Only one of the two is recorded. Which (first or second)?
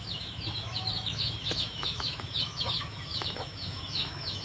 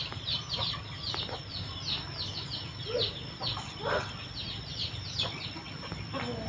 second